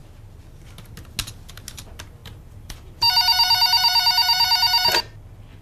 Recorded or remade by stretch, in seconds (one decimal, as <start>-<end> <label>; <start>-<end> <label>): 0.0-2.2 recorded; 2.2-5.6 remade